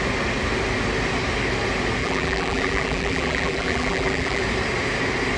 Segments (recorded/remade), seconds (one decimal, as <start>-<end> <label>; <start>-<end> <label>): 0.0-2.0 recorded; 2.0-4.4 remade; 4.4-5.4 recorded